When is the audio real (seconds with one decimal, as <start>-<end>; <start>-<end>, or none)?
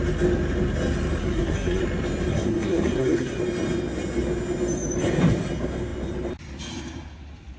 0.0-1.2; 1.8-2.3; 3.4-7.6